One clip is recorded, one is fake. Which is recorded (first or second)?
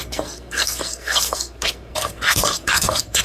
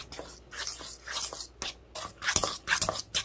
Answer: second